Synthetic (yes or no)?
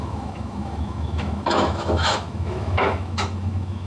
yes